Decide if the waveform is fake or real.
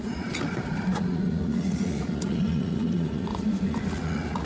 fake